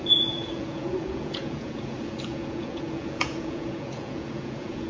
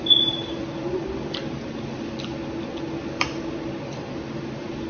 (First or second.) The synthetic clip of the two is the first